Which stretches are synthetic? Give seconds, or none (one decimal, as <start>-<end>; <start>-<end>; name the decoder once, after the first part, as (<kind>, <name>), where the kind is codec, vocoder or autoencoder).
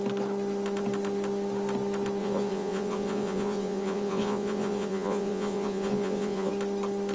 2.2-6.5 (vocoder, Vocos)